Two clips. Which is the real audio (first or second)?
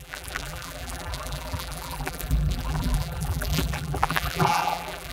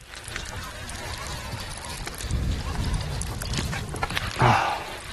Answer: second